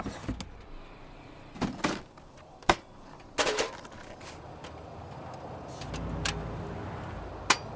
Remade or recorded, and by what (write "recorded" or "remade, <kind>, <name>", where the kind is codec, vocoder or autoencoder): recorded